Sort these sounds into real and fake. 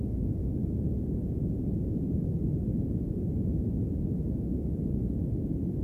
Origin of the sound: real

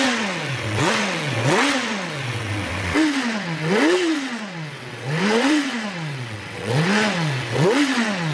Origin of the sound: fake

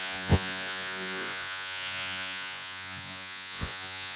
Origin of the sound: fake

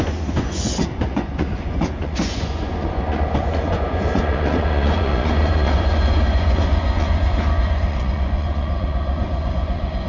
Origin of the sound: fake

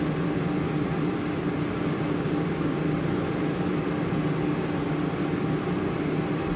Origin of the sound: real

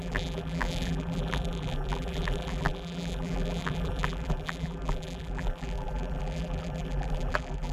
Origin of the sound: fake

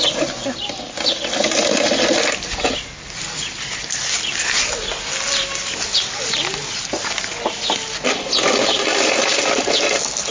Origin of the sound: real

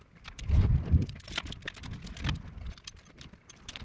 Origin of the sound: fake